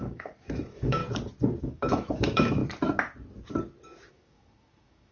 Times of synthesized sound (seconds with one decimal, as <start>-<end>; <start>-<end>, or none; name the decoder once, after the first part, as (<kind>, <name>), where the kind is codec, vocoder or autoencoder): 0.0-1.0 (autoencoder, DAC-VAE); 1.6-2.6; 4.1-5.1